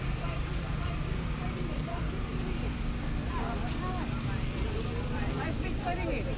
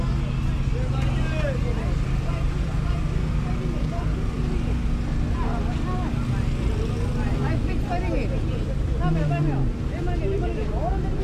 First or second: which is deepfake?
first